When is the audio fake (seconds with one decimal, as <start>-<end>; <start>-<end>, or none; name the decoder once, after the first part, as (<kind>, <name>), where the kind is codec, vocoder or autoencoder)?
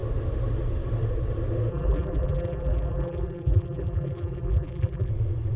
1.7-5.1 (vocoder, BigVGAN v2)